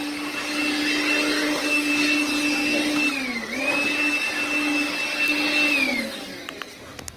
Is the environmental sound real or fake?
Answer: real